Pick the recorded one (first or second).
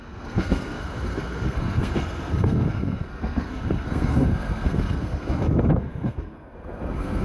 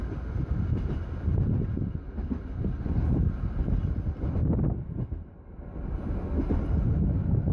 second